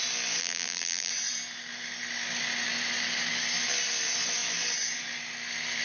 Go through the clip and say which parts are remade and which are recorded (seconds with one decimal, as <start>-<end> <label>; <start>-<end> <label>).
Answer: 0.0-0.4 recorded; 0.4-1.1 remade; 1.1-5.8 recorded

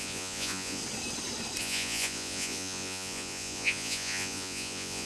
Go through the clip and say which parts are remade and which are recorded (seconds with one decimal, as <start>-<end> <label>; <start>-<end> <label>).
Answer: 0.0-0.8 remade; 0.8-1.6 recorded; 1.6-5.1 remade

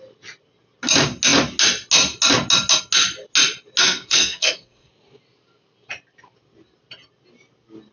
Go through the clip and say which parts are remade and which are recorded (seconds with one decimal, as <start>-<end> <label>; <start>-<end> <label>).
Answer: 0.0-3.8 recorded; 3.8-4.9 remade; 4.9-7.9 recorded